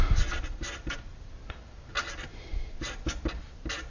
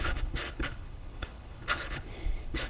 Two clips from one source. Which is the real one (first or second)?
first